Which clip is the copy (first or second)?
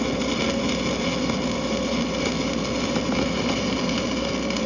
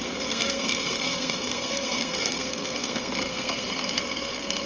second